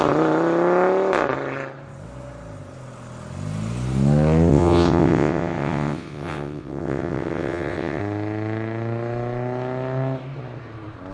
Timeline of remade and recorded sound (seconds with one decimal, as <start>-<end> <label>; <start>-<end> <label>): 0.0-4.5 recorded; 4.5-8.0 remade; 8.0-11.1 recorded